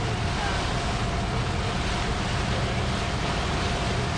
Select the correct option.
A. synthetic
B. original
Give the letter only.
B